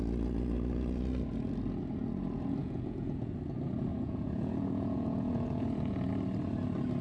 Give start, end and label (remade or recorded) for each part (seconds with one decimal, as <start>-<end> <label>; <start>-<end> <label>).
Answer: 0.0-2.6 recorded; 2.6-3.3 remade; 3.3-3.9 recorded; 3.9-6.1 remade; 6.1-7.0 recorded